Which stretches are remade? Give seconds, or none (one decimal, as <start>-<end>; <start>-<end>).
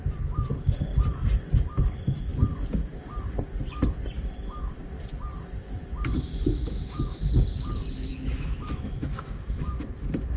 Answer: 6.3-7.3; 8.1-9.7